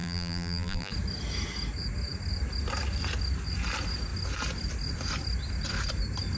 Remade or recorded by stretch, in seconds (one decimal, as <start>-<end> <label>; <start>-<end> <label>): 0.0-0.9 remade; 0.9-6.4 recorded